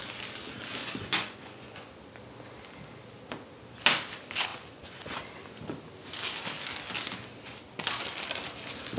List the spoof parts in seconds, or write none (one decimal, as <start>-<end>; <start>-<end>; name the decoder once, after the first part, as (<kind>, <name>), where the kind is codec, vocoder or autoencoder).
0.8-1.9 (vocoder, Vocos); 4.5-5.2